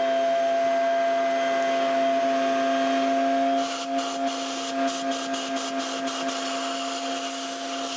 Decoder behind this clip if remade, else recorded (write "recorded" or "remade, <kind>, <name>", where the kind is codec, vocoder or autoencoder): recorded